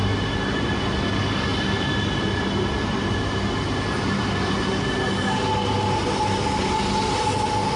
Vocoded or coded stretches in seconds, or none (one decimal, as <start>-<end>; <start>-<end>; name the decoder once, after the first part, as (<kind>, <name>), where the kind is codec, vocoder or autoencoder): none